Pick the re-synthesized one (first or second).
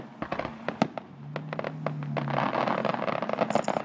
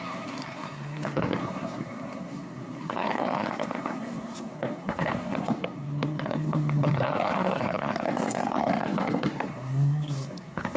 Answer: second